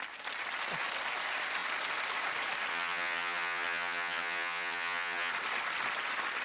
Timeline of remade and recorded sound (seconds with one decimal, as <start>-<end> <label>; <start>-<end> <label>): 0.0-2.7 recorded; 2.7-5.3 remade; 5.3-6.4 recorded